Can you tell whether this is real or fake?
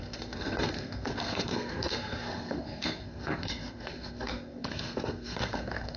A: fake